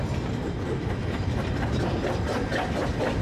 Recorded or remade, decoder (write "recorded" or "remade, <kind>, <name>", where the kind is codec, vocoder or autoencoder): recorded